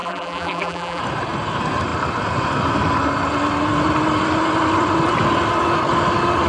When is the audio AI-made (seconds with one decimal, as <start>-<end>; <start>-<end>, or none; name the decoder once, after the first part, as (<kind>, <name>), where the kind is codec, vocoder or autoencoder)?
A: 0.0-1.0 (vocoder, BigVGAN v2)